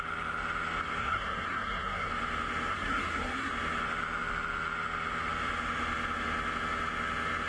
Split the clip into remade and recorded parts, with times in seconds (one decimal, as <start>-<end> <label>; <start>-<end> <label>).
0.0-1.0 recorded; 1.0-2.1 remade; 2.1-2.7 recorded; 2.7-3.5 remade; 3.5-7.5 recorded